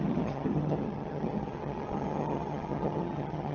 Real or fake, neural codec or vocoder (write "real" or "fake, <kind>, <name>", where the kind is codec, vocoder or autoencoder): fake, vocoder, HiFi-GAN